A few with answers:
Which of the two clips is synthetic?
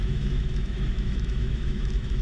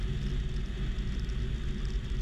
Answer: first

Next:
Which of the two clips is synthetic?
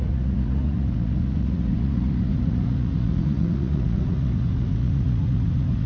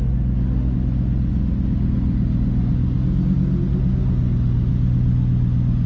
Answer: first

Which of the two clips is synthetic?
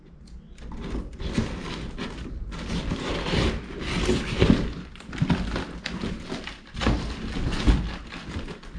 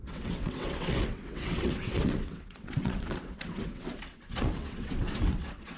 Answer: second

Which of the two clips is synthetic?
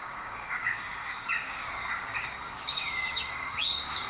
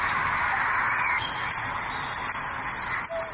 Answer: first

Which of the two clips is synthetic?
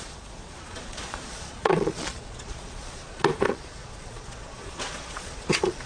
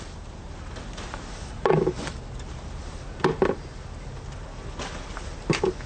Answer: first